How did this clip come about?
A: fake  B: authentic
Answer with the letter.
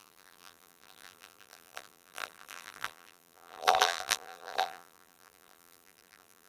A